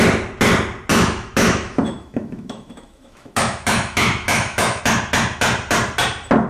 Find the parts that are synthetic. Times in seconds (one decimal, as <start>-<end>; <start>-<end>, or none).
0.9-4.8